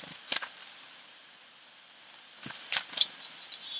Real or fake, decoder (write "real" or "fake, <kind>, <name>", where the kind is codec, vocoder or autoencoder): real